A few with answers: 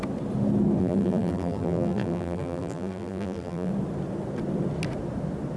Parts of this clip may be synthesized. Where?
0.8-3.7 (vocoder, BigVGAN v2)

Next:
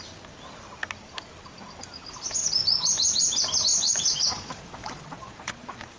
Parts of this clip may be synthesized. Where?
3.7-6.0 (vocoder, Vocos)

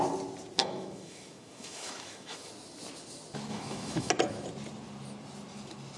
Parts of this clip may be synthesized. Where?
0.6-2.5 (autoencoder, DAC-VAE); 3.5-4.1

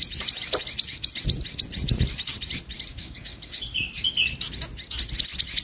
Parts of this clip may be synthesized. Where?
2.9-3.6 (codec, DAC)